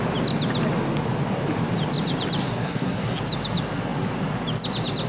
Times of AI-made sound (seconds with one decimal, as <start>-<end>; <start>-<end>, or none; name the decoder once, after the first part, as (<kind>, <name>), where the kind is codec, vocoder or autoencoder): 2.4-3.2 (codec, SNAC)